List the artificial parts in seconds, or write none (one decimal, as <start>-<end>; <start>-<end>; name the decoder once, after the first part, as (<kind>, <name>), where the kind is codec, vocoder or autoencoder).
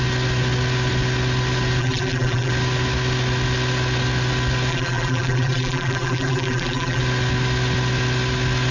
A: 1.8-2.5 (vocoder, BigVGAN v2); 4.7-7.0